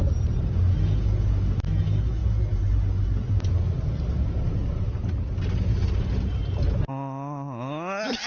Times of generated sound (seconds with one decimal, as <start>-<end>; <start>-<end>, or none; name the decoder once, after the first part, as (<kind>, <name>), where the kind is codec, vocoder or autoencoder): none